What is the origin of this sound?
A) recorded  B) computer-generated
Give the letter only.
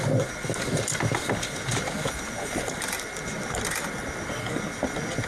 A